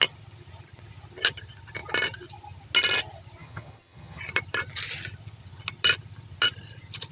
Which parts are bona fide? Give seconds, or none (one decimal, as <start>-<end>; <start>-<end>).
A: 0.0-3.4; 4.2-7.1